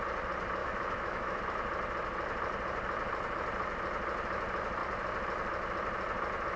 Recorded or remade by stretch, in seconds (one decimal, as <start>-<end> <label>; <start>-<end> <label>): 0.0-0.6 recorded; 0.6-1.4 remade; 1.4-6.6 recorded